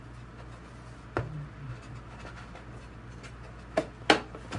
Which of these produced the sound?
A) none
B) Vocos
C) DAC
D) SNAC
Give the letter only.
A